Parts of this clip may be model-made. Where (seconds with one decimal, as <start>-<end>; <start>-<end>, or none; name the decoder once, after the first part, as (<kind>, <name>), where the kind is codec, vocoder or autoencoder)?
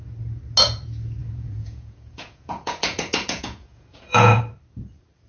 1.2-4.4 (vocoder, Vocos)